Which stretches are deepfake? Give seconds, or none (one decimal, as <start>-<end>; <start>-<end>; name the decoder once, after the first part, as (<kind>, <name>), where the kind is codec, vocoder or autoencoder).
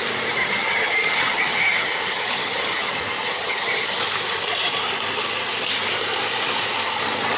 0.4-4.0 (vocoder, HiFi-GAN)